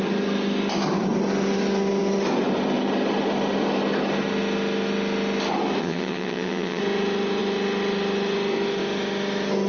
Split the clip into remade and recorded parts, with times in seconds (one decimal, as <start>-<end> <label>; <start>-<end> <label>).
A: 0.0-5.8 recorded; 5.8-6.8 remade; 6.8-9.7 recorded